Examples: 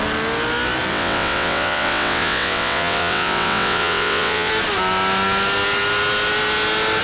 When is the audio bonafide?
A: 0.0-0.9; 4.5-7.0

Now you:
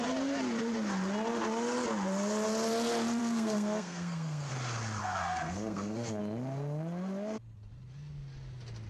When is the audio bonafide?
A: 0.0-3.2; 4.5-5.0; 6.2-8.9